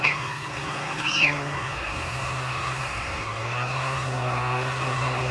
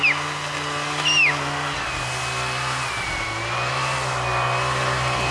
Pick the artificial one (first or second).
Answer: first